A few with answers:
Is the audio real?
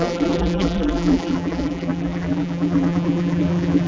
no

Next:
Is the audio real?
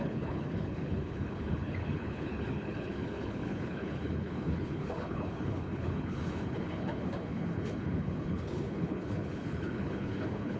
no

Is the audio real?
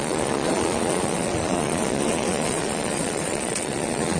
no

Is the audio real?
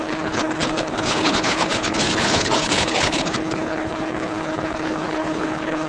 no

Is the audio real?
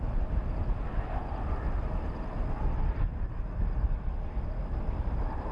yes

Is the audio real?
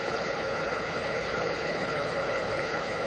no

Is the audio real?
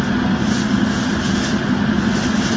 yes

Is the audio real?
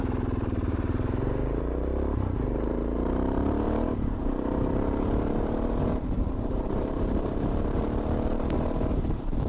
no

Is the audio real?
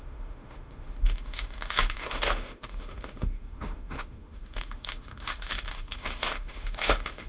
no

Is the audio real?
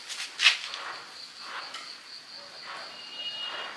yes